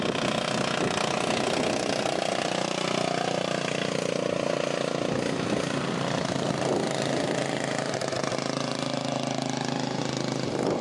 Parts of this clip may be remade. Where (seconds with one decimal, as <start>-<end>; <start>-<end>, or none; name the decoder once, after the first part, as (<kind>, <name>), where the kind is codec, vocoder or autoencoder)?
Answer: none